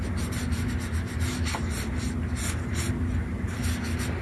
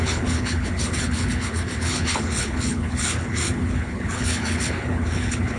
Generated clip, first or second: second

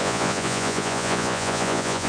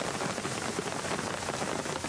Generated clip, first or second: first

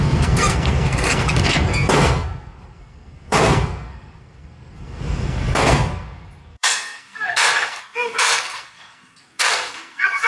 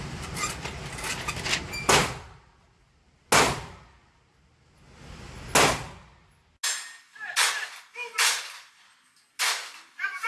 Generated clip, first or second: first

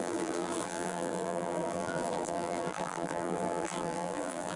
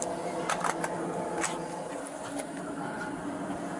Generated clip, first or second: first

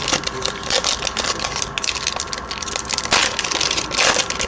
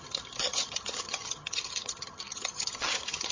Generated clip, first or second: second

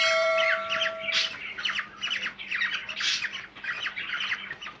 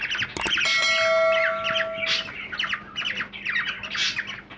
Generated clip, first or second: first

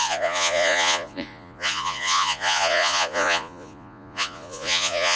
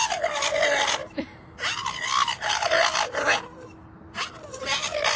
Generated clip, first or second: first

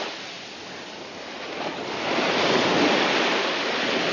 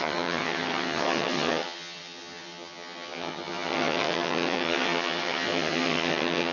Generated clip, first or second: second